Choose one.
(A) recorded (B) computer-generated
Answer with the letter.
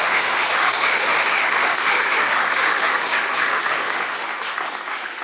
B